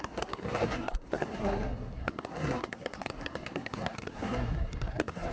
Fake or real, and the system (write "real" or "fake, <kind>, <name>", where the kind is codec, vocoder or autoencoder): fake, codec, SNAC